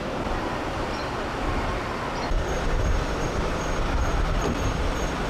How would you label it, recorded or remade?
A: recorded